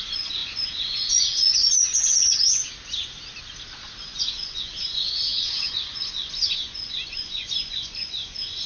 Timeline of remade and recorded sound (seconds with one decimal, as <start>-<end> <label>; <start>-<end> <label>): 0.0-2.6 remade; 2.6-4.2 recorded; 4.2-8.7 remade